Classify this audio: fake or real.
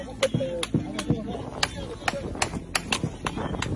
real